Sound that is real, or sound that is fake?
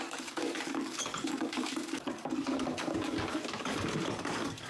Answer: fake